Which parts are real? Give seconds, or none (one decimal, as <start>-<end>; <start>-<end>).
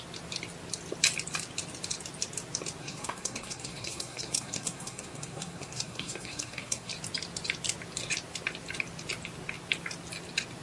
0.0-2.8; 6.9-10.6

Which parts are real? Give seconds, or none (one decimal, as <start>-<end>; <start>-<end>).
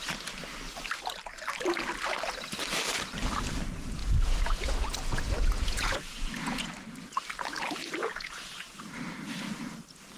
0.0-4.0; 6.7-8.0; 8.8-10.2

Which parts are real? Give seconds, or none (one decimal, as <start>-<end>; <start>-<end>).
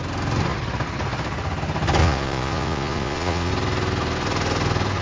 0.0-2.0; 3.5-5.0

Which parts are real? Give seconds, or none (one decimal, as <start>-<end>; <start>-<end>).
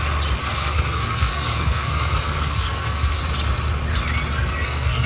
0.0-0.4; 3.2-4.3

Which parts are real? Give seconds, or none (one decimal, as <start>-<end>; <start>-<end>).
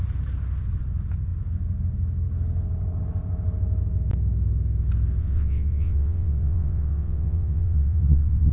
0.0-5.2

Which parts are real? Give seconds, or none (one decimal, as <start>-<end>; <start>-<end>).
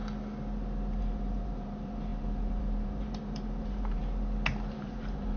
0.0-0.9; 4.0-4.7